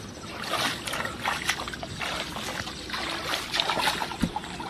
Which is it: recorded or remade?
recorded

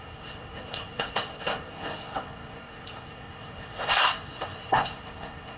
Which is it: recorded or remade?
remade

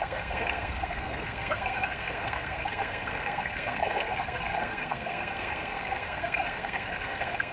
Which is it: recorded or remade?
remade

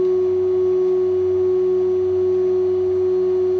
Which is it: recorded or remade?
recorded